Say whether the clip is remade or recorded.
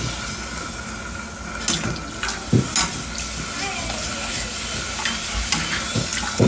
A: recorded